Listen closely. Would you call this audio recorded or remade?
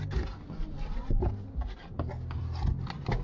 recorded